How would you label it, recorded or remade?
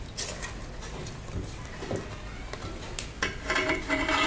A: recorded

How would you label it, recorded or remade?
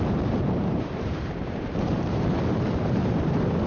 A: remade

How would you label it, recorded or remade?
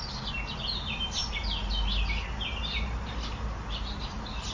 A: recorded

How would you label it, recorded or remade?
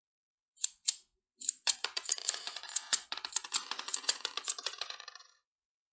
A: remade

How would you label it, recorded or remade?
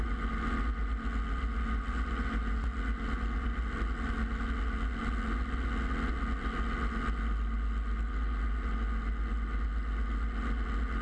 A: recorded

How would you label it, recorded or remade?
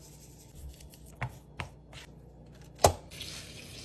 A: recorded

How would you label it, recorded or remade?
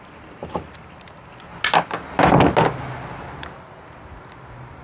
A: recorded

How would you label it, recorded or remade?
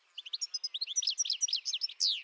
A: recorded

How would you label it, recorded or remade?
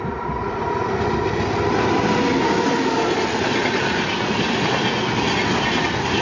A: recorded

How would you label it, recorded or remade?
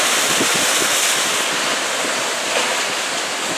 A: recorded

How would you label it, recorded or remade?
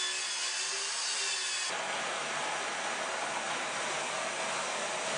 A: recorded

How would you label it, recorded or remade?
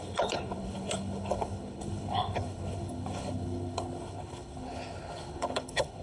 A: remade